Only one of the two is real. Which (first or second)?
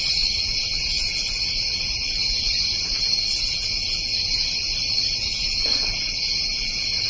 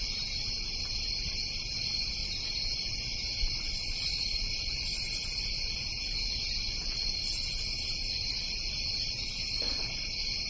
second